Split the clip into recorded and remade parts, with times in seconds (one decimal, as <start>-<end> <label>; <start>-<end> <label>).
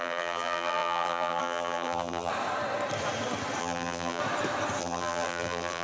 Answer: 0.0-2.3 remade; 2.3-3.6 recorded; 3.6-4.2 remade; 4.2-4.8 recorded; 4.8-5.8 remade